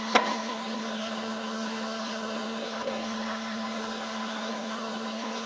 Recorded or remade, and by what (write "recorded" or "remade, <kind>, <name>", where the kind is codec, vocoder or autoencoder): remade, codec, SNAC